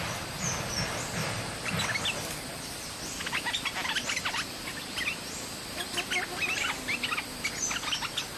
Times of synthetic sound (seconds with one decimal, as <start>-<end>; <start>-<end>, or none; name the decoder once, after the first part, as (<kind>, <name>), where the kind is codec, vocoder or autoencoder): 1.2-1.8 (vocoder, BigVGAN v2)